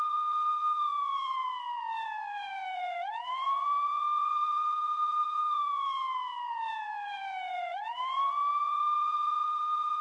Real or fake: fake